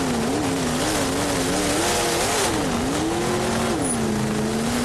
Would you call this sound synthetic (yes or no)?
no